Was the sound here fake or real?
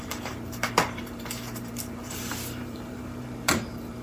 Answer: fake